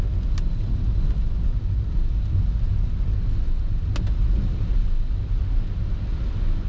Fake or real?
real